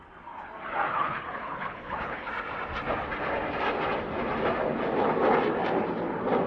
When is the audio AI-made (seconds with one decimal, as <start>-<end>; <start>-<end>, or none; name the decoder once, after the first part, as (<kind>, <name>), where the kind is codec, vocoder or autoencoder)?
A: 0.9-2.3 (codec, HILCodec)